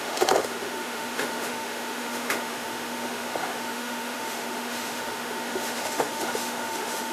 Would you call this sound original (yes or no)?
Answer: no